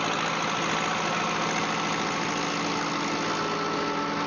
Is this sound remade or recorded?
recorded